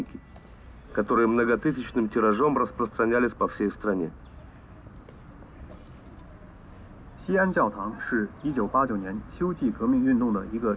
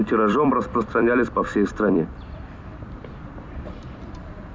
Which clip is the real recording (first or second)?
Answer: first